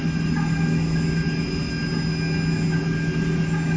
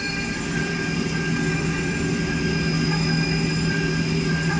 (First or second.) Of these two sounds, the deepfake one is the second